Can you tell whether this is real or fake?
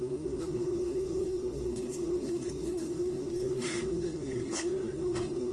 fake